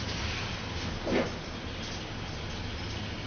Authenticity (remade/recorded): recorded